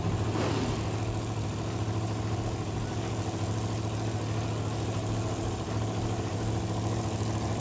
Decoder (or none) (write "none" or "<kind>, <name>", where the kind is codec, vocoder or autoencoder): none